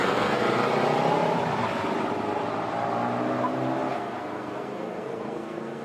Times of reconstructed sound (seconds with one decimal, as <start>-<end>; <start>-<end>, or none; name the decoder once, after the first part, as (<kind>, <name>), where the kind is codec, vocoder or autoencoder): 0.0-0.4 (codec, SNAC); 3.9-5.8